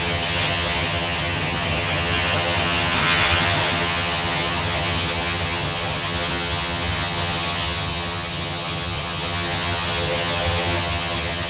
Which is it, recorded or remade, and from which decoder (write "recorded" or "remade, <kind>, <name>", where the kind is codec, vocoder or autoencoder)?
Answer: remade, vocoder, HiFi-GAN